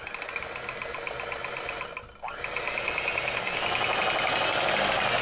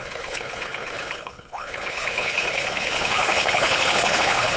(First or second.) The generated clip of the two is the second